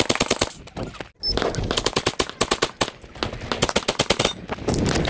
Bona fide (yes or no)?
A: yes